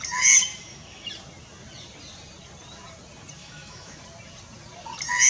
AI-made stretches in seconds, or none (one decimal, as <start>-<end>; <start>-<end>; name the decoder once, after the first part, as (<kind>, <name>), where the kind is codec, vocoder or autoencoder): 0.5-1.1 (autoencoder, DAC-VAE); 3.4-4.0